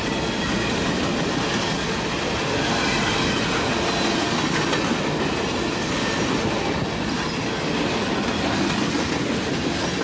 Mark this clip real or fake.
real